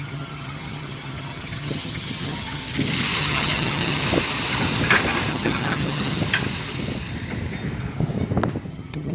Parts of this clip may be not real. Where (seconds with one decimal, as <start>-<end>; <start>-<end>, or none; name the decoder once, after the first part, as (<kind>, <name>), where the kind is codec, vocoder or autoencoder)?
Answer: 0.0-2.6 (vocoder, HiFi-GAN); 3.2-4.0; 5.3-6.2; 8.7-9.1